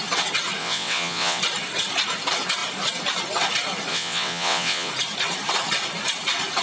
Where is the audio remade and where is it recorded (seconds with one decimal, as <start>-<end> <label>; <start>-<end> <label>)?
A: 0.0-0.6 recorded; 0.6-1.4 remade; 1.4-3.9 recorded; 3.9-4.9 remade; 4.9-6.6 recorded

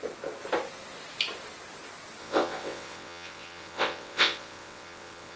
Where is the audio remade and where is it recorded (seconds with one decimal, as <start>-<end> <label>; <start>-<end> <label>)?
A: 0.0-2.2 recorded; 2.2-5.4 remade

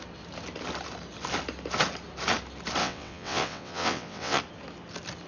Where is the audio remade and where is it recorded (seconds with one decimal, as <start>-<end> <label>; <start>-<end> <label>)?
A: 0.0-2.8 recorded; 2.8-4.4 remade; 4.4-5.3 recorded

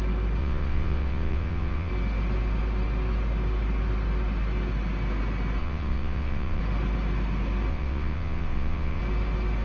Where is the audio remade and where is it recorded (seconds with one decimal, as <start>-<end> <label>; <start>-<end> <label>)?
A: 0.0-0.4 recorded; 0.4-1.9 remade; 1.9-5.6 recorded; 5.6-6.6 remade; 6.6-7.7 recorded; 7.7-9.0 remade; 9.0-9.6 recorded

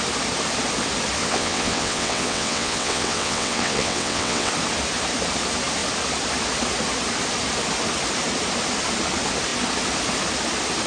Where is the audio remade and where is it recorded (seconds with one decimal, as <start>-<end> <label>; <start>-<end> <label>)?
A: 0.0-1.2 recorded; 1.2-4.5 remade; 4.5-10.9 recorded